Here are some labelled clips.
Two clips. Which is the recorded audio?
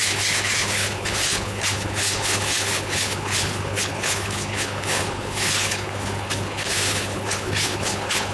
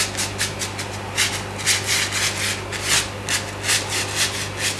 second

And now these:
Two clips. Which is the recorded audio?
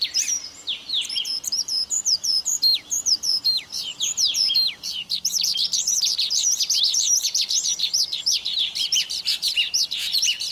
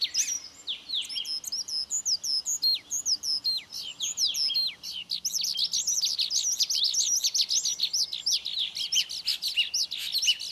second